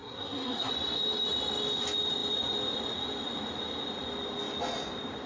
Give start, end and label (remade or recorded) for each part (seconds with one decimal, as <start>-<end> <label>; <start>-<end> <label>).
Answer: 0.0-0.7 remade; 0.7-5.3 recorded